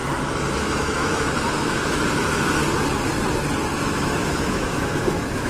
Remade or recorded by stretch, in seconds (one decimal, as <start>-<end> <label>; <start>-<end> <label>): 0.0-0.6 recorded; 0.6-2.6 remade; 2.6-3.7 recorded; 3.7-5.5 remade